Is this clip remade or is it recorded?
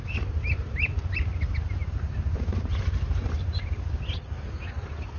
recorded